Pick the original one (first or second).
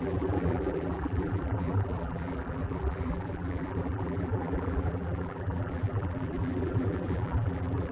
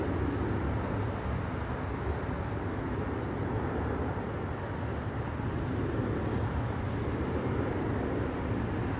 second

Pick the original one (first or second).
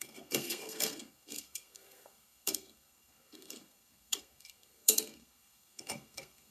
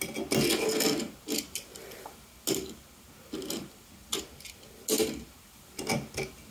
second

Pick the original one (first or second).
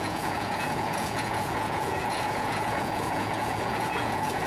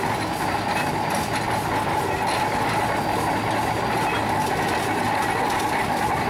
second